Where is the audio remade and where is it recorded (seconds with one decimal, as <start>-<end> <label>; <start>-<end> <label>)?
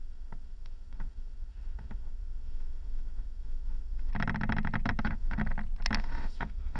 0.0-4.1 remade; 4.1-5.0 recorded; 5.0-5.4 remade; 5.4-6.0 recorded; 6.0-6.8 remade